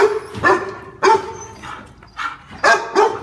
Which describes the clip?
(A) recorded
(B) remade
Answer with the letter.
A